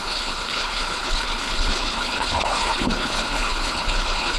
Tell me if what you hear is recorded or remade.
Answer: remade